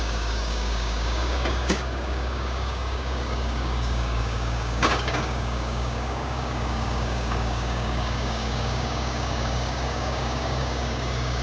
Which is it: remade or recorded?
remade